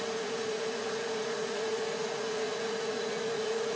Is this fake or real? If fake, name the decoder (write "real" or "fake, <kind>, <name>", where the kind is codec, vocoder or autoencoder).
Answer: fake, vocoder, Vocos